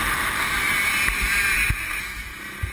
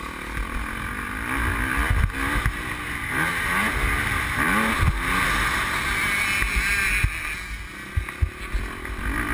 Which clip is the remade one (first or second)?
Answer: first